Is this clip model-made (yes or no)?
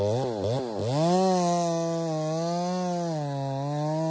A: no